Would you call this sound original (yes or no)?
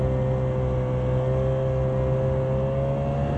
yes